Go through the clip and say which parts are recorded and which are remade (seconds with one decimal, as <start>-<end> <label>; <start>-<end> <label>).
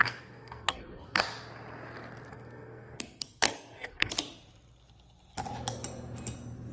0.0-1.2 remade; 1.2-2.3 recorded; 2.3-4.1 remade; 4.1-6.7 recorded